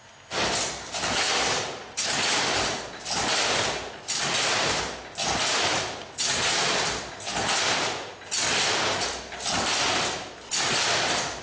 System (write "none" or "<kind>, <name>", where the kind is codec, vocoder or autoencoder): none